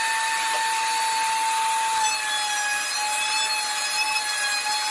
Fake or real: real